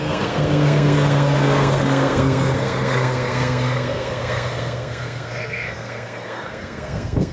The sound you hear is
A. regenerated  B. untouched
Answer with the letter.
A